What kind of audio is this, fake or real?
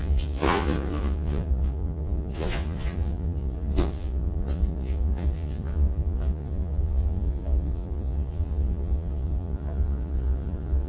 fake